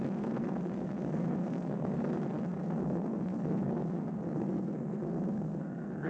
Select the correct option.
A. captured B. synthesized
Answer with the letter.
B